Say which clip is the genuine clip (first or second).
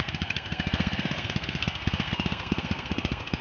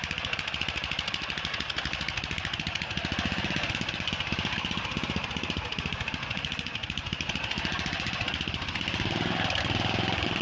second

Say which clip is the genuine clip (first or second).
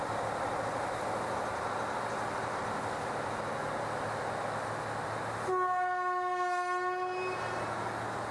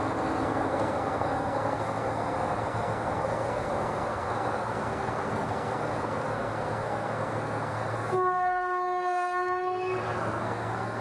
first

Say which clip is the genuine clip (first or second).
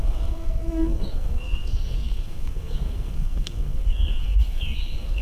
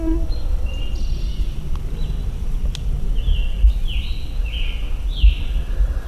second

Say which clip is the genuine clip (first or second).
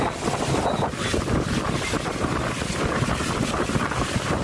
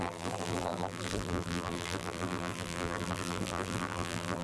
first